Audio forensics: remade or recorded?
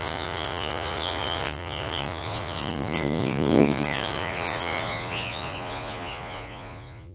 remade